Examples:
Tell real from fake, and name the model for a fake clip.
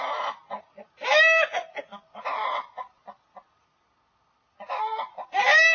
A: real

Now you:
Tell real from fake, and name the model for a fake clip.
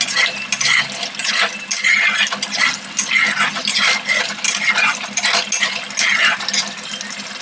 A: real